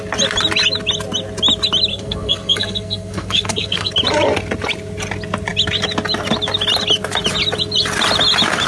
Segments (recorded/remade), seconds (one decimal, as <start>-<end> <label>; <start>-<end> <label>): 0.0-1.9 recorded; 1.9-3.9 remade; 3.9-8.7 recorded